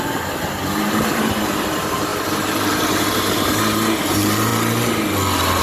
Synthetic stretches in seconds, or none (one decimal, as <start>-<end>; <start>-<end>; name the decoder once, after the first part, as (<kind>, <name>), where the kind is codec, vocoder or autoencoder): 0.0-4.5 (vocoder, BigVGAN v2)